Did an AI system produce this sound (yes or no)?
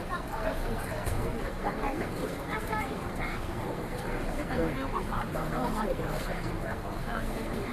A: yes